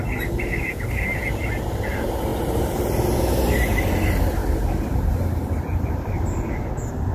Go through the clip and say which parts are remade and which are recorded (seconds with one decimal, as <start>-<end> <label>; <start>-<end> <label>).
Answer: 0.0-7.1 recorded

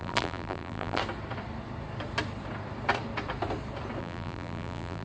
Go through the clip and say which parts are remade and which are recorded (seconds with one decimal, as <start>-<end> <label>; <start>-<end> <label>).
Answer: 0.0-1.0 remade; 1.0-4.0 recorded; 4.0-5.0 remade

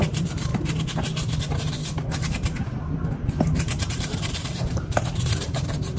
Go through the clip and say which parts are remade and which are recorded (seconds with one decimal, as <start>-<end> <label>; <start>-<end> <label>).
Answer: 0.0-0.5 remade; 0.5-3.5 recorded; 3.5-6.0 remade